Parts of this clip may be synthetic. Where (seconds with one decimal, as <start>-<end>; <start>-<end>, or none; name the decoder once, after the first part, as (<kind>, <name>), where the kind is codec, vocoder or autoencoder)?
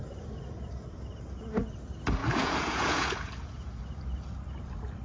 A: 2.2-3.8 (vocoder, Vocos)